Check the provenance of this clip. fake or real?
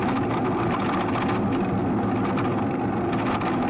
real